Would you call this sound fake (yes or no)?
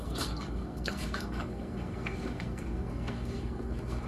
yes